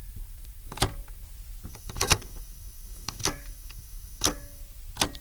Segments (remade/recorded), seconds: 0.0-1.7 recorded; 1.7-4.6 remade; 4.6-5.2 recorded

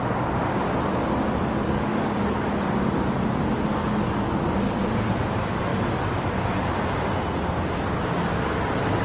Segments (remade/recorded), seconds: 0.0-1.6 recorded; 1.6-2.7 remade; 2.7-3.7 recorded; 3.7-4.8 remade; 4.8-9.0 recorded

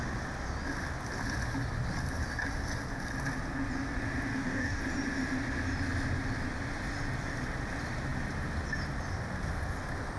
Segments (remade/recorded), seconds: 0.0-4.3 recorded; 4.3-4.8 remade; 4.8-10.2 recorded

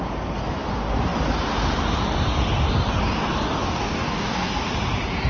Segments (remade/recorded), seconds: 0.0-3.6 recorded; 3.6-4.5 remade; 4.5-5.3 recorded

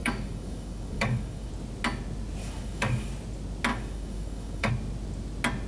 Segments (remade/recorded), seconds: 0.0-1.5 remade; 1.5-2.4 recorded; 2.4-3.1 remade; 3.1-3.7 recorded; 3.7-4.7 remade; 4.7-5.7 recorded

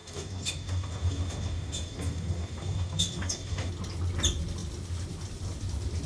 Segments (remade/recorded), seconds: 0.0-3.7 remade; 3.7-6.1 recorded